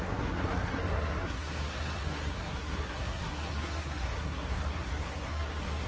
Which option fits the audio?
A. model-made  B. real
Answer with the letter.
A